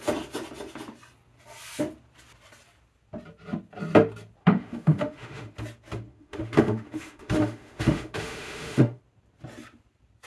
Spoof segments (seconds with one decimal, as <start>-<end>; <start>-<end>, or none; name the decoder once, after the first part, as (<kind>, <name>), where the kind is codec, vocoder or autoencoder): 4.4-5.5 (autoencoder, DAC-VAE); 6.1-9.0